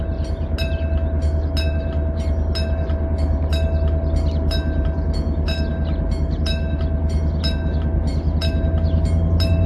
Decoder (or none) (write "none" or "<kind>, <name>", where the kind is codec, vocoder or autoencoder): none